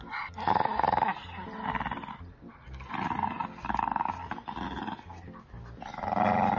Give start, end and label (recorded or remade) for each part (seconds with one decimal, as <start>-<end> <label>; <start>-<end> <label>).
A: 0.0-6.6 recorded